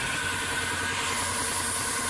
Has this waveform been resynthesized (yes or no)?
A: no